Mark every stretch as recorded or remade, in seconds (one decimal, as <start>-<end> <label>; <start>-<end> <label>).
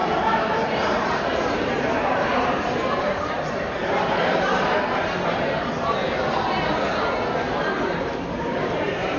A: 0.0-3.8 remade; 3.8-7.5 recorded; 7.5-9.2 remade